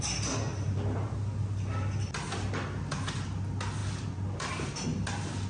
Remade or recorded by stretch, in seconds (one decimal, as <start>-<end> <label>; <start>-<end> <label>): 0.0-5.5 recorded